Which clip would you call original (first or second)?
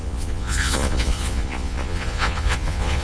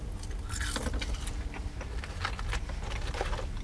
second